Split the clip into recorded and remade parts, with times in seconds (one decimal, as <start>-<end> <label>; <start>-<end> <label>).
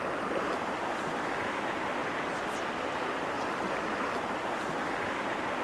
0.0-5.6 recorded